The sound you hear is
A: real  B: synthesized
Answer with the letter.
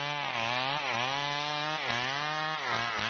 A